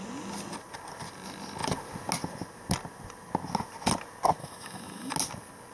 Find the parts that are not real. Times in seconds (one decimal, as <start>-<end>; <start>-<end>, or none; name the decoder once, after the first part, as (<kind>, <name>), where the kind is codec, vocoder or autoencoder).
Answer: 4.4-5.1 (autoencoder, DAC-VAE)